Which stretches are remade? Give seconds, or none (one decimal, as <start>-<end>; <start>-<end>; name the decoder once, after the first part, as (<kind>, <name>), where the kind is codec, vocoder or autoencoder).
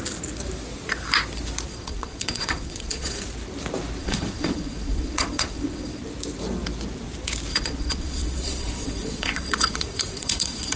1.7-3.2 (vocoder, Vocos); 4.0-6.0; 7.5-10.8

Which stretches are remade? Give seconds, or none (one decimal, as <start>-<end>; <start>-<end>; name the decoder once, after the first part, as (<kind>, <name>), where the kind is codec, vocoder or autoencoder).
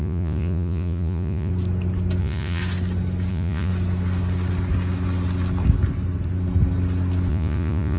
0.0-1.5 (vocoder, Vocos); 2.2-2.6; 3.3-3.7; 7.3-8.0